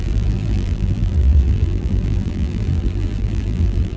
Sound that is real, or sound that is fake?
fake